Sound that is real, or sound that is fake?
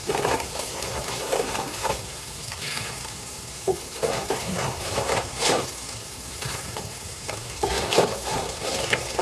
fake